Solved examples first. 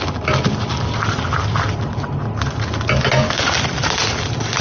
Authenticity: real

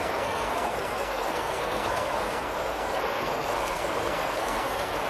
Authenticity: fake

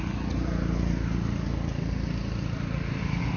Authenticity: real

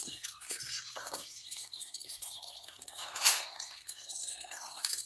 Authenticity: fake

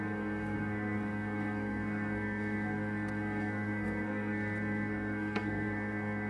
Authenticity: fake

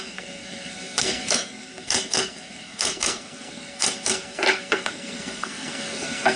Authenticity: fake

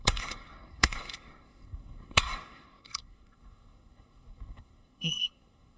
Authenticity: fake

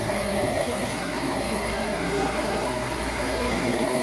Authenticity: fake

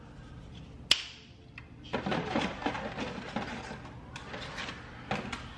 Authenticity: real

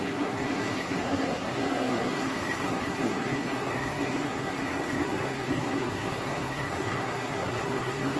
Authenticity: fake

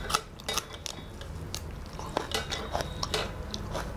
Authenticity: real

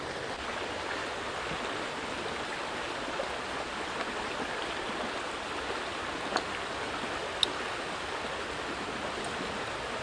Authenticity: real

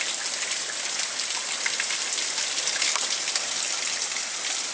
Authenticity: real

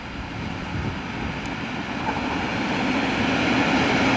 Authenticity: real